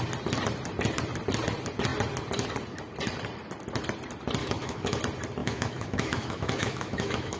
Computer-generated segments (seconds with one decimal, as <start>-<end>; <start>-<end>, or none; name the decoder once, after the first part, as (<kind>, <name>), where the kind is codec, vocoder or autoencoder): 4.4-5.0 (autoencoder, DAC-VAE); 5.4-7.4